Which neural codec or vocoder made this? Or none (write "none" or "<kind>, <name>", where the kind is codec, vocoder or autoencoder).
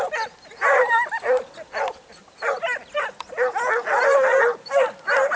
none